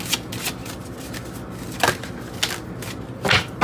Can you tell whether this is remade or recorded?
recorded